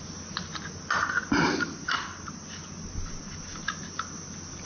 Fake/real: real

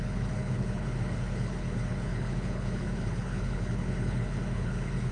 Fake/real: fake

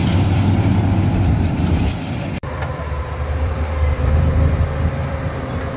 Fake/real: fake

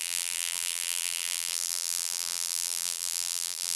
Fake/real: fake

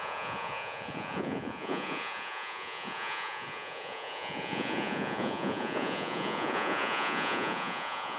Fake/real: fake